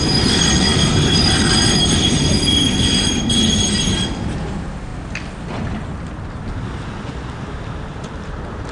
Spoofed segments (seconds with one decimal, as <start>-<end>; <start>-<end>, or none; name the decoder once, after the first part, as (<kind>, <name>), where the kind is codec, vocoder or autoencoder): 0.7-3.7 (vocoder, BigVGAN v2); 7.9-8.7